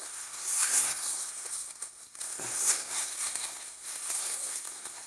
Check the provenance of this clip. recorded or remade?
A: remade